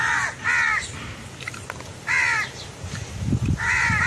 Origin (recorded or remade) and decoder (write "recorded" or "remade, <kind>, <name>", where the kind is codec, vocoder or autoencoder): recorded